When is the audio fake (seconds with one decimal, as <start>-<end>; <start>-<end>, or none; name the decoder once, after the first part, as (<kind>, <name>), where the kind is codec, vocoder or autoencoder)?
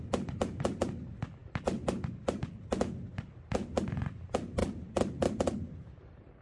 none